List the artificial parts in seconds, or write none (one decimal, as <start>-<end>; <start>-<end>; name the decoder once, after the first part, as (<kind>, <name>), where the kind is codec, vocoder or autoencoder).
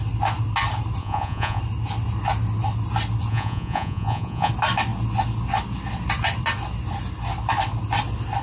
1.0-1.6 (vocoder, Vocos); 3.3-4.5